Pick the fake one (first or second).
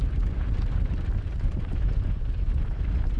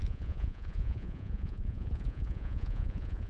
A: second